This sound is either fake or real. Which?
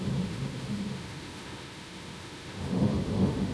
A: fake